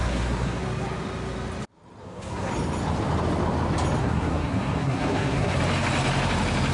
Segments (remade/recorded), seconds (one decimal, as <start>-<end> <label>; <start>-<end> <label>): 0.0-0.6 remade; 0.6-2.0 recorded; 2.0-2.5 remade; 2.5-4.0 recorded; 4.0-5.6 remade; 5.6-6.7 recorded